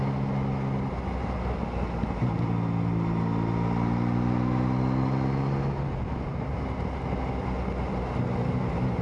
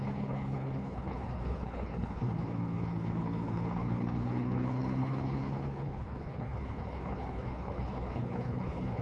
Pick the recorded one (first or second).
first